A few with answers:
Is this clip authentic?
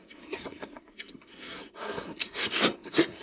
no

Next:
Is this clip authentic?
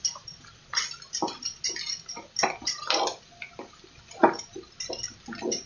yes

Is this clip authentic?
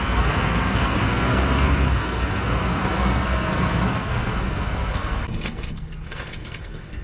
no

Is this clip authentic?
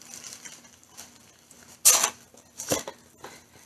yes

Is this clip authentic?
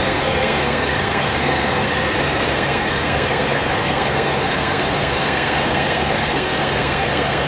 no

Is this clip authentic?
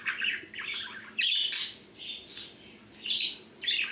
yes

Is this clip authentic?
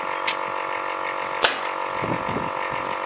yes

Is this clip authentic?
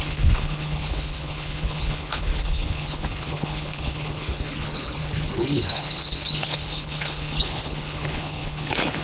no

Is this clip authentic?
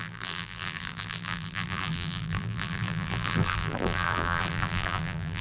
no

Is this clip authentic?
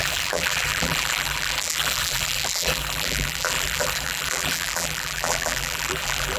no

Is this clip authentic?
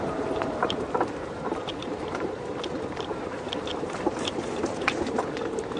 no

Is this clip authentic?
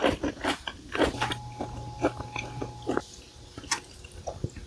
yes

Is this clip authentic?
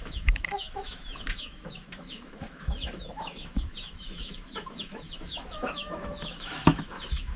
no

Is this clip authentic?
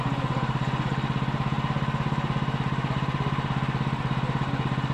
yes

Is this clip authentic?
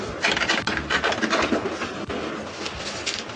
yes